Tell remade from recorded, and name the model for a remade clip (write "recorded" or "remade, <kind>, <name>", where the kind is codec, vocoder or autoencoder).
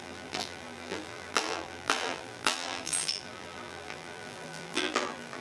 remade, vocoder, BigVGAN v2